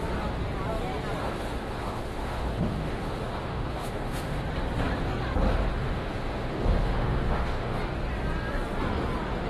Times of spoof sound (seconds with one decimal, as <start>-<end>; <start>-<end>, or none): 1.2-4.4; 5.8-7.8